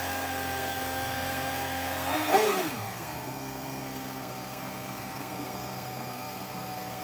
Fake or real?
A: fake